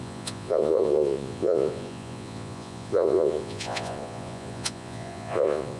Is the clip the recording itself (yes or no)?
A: no